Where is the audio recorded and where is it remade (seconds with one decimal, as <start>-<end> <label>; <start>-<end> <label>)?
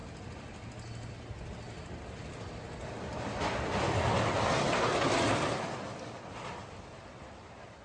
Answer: 0.0-7.8 recorded